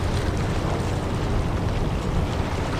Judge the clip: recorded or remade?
recorded